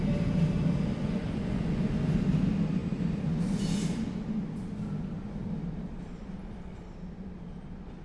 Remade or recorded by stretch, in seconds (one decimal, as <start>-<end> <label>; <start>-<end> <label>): 0.0-1.0 recorded; 1.0-1.9 remade; 1.9-8.0 recorded